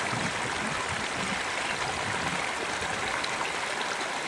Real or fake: real